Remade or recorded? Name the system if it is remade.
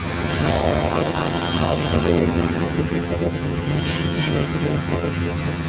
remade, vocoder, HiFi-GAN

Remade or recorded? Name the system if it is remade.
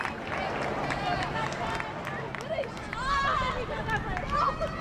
recorded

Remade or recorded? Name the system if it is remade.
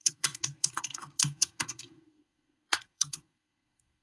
remade, codec, SNAC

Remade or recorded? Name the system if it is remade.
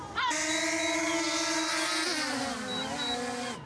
recorded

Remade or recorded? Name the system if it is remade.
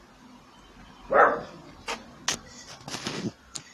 recorded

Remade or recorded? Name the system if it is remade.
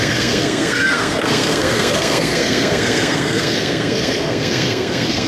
remade, codec, SNAC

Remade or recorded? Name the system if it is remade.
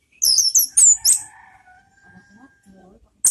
recorded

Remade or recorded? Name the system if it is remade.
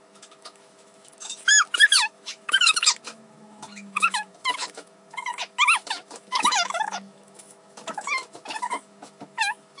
remade, autoencoder, DAC-VAE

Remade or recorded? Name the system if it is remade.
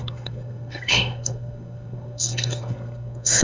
remade, codec, SNAC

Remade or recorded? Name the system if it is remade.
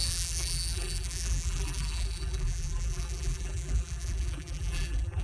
remade, vocoder, BigVGAN v2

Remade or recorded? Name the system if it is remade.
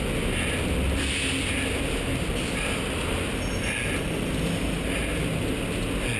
recorded